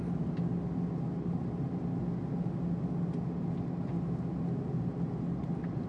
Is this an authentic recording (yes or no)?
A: yes